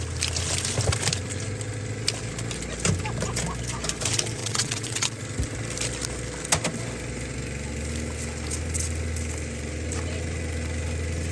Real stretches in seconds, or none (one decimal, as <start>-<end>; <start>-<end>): 0.0-4.4; 5.2-11.3